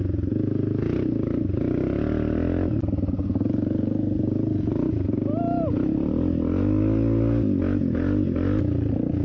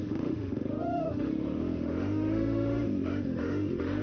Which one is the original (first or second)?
first